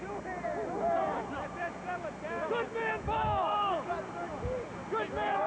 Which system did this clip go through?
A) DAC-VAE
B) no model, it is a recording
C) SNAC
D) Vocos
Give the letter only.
B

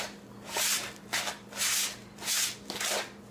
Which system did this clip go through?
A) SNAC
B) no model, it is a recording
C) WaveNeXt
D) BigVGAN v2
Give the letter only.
B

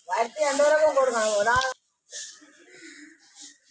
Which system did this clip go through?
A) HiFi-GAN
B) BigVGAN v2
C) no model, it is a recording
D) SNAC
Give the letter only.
C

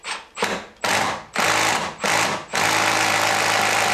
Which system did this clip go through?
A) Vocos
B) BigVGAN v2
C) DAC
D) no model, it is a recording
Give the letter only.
D